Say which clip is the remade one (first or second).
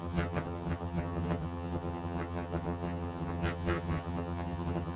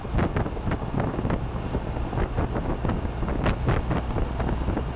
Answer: first